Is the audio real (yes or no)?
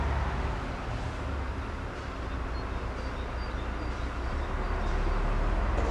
yes